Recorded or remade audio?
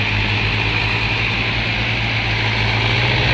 recorded